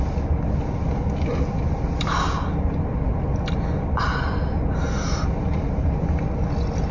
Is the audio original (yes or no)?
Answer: yes